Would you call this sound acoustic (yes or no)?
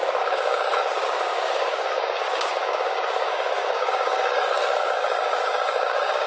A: no